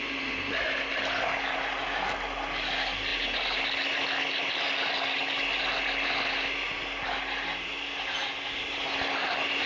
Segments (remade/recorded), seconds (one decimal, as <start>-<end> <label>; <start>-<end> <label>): 0.0-9.7 recorded